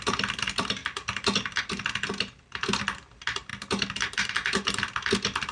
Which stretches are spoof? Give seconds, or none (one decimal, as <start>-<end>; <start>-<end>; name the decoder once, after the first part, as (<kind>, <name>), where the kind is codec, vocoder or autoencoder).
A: none

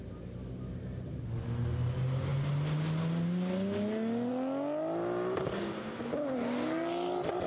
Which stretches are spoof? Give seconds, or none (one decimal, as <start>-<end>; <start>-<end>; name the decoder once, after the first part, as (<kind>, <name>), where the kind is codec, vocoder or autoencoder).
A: none

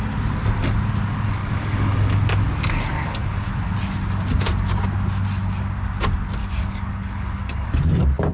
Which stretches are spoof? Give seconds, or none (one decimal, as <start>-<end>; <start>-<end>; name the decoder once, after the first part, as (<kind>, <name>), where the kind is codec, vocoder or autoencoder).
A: 1.4-2.2 (codec, DAC); 2.9-3.5; 6.4-7.7